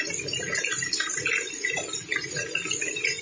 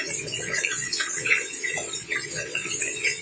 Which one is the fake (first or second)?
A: second